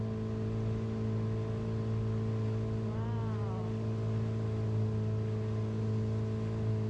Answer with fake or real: real